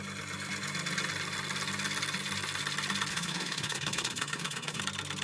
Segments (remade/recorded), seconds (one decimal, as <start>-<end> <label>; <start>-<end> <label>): 0.0-3.1 recorded; 3.1-4.8 remade; 4.8-5.2 recorded